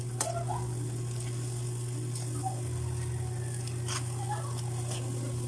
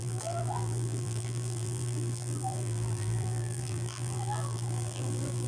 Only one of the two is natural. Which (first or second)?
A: first